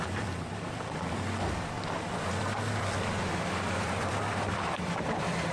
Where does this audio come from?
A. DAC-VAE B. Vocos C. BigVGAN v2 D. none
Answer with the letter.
C